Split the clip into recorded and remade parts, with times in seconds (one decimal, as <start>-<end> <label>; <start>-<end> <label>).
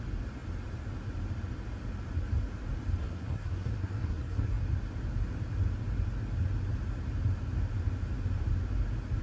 0.0-3.0 recorded; 3.0-4.6 remade; 4.6-9.2 recorded